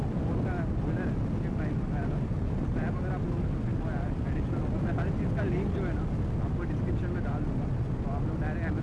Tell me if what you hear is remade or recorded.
recorded